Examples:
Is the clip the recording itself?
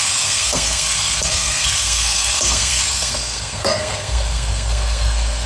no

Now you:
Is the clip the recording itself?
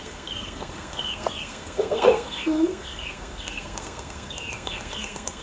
no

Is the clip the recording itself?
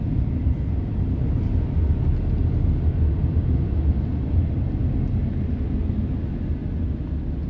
yes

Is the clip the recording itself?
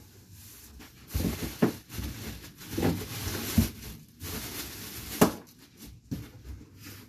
yes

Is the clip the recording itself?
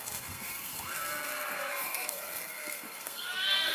no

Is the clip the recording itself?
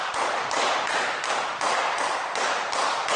yes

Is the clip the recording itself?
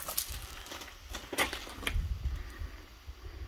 yes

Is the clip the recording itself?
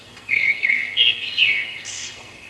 no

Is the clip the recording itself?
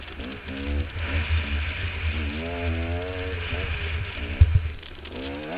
yes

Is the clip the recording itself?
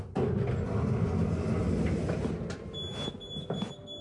yes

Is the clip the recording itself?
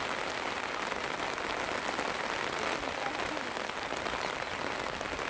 yes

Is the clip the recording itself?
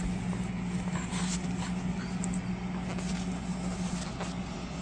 yes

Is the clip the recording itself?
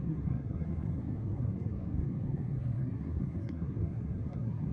no